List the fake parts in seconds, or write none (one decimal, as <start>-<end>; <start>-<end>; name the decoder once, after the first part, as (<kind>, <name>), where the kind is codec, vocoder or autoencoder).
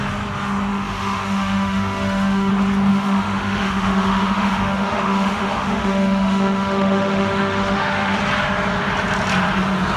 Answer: 0.7-2.5 (autoencoder, DAC-VAE); 2.9-8.2